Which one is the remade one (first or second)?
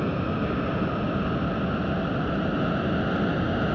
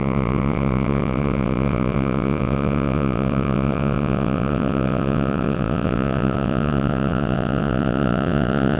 second